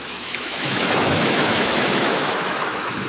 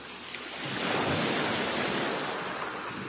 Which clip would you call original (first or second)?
second